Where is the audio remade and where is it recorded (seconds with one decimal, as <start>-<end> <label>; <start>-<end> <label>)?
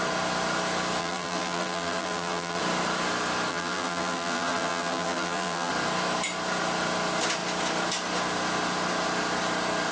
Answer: 0.0-1.0 recorded; 1.0-2.6 remade; 2.6-3.5 recorded; 3.5-5.7 remade; 5.7-9.9 recorded